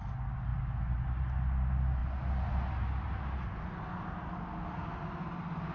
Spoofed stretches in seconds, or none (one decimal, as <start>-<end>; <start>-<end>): none